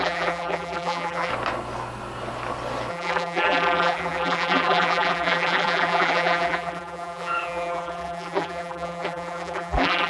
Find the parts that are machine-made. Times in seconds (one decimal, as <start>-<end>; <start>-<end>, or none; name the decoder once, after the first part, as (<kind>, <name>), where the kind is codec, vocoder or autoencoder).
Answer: 0.0-1.3 (vocoder, BigVGAN v2); 2.9-10.1